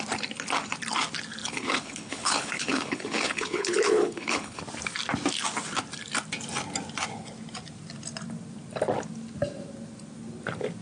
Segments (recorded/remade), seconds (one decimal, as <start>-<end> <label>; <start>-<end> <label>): 0.0-1.4 recorded; 1.4-4.6 remade; 4.6-10.8 recorded